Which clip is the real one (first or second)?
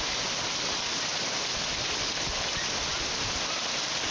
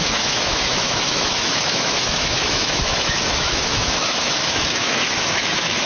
first